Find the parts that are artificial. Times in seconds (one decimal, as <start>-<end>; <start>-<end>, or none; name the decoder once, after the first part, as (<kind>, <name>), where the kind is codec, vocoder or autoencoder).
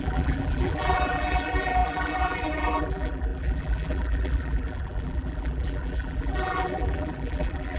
0.0-7.8 (vocoder, BigVGAN v2)